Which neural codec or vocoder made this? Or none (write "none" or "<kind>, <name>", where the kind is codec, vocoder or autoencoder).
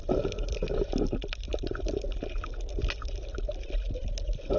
none